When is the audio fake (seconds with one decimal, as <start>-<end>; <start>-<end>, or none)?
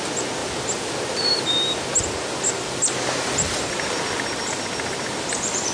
none